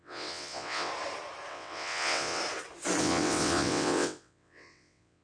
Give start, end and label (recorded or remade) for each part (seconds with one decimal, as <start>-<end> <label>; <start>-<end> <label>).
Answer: 0.0-0.9 remade; 0.9-1.5 recorded; 1.5-2.4 remade; 2.4-3.0 recorded; 3.0-5.2 remade